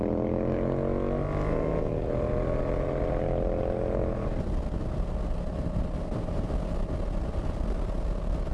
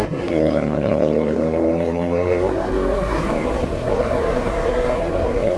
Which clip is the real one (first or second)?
first